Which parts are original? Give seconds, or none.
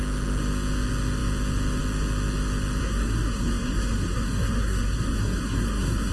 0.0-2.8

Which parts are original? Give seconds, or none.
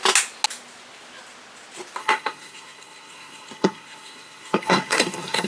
0.0-2.0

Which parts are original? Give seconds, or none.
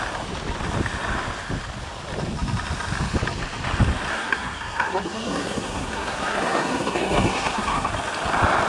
0.0-4.1; 7.9-8.7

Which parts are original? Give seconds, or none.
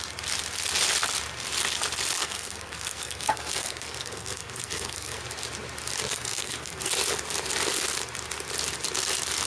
0.0-2.2; 5.2-6.1; 6.9-9.5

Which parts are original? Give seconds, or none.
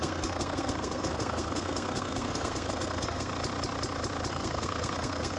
3.3-4.3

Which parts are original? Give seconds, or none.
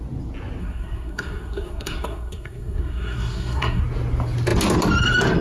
0.0-0.6; 3.8-5.4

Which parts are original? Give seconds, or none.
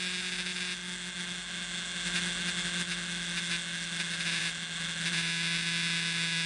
0.0-6.5